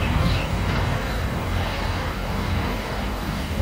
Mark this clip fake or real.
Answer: fake